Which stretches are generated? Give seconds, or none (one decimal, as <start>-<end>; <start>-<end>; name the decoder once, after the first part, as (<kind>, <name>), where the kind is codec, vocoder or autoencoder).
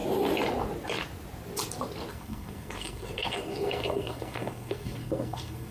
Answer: 2.1-5.7 (codec, SNAC)